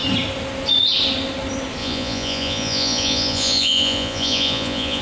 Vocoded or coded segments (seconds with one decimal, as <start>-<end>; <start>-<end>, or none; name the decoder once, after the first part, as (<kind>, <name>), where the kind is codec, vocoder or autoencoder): 1.8-5.0 (vocoder, Vocos)